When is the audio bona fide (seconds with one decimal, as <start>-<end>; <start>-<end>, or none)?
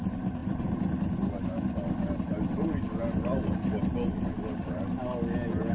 0.0-5.7